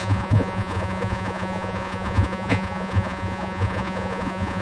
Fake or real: fake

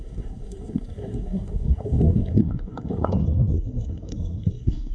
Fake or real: fake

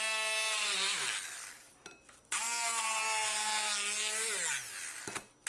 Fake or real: real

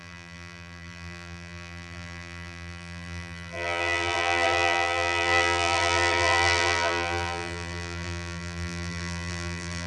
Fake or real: fake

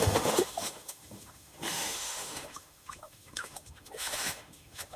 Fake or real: fake